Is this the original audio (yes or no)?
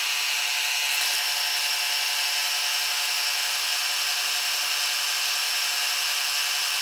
yes